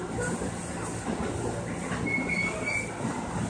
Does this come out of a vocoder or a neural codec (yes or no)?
no